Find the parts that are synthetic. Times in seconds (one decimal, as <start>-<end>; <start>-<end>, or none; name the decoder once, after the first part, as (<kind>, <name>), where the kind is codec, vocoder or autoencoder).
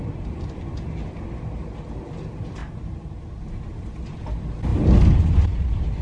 2.6-3.4 (vocoder, BigVGAN v2)